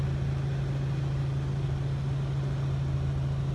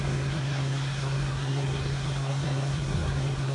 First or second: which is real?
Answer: first